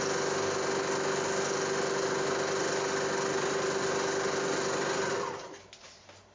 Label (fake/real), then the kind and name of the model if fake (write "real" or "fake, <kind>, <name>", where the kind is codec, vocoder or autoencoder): real